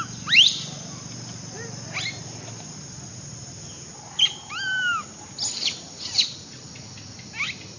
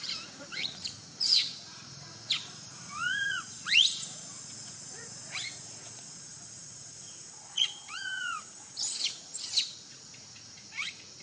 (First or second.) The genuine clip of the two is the first